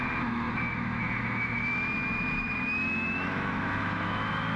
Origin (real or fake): fake